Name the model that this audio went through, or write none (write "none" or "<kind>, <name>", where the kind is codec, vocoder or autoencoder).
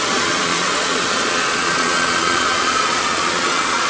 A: vocoder, Vocos